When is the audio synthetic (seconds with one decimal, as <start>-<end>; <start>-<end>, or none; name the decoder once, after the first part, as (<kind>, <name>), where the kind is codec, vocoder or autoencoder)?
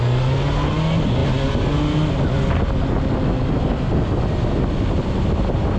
none